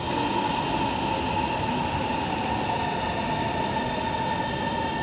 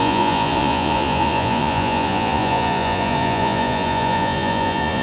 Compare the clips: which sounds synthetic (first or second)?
second